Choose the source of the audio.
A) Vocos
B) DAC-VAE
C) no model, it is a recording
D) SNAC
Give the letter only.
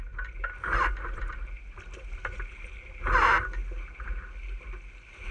C